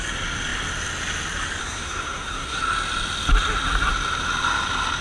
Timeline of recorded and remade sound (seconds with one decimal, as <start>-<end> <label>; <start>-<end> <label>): 0.0-1.6 recorded; 1.6-2.6 remade; 2.6-5.0 recorded